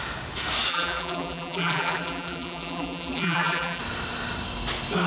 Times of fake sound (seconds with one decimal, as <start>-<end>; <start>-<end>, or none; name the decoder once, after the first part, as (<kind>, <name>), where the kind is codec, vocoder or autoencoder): 0.7-3.8 (vocoder, BigVGAN v2)